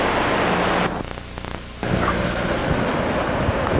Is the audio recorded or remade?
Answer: recorded